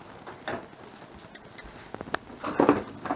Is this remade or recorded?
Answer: recorded